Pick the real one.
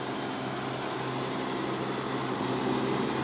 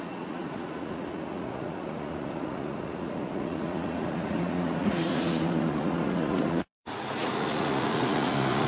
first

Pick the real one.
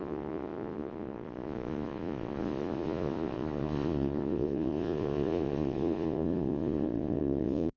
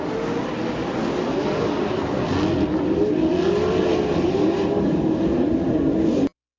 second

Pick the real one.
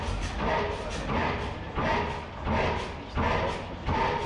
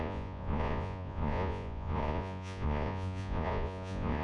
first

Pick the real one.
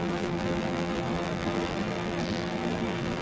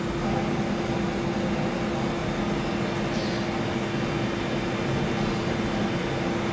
second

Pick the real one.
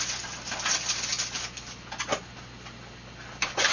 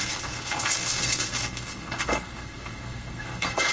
first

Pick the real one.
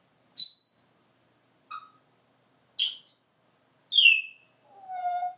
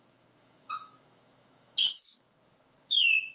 first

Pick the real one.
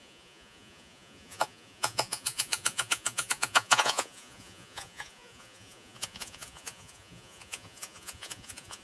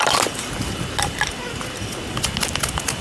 second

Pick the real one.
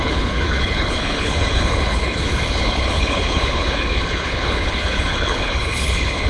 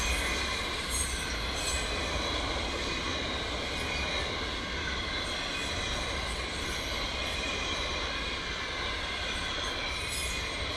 second